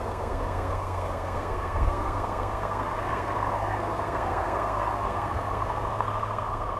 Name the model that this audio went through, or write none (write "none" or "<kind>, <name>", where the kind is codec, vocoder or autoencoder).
codec, SNAC